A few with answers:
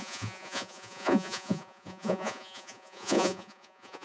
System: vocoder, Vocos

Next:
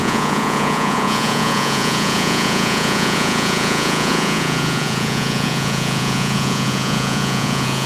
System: vocoder, Vocos